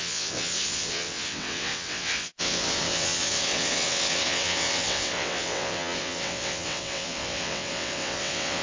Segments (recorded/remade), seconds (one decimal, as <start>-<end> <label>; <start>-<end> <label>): 0.0-8.6 remade